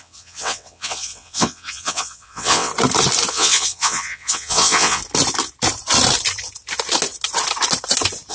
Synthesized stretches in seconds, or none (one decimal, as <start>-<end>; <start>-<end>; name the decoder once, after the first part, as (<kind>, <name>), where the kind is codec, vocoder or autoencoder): 0.0-2.7 (vocoder, WaveNeXt); 3.3-5.0